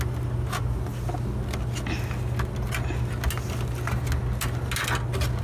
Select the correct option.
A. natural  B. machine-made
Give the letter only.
A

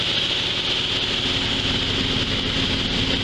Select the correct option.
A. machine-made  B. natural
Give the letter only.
B